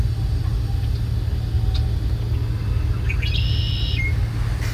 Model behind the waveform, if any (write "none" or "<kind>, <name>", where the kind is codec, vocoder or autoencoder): none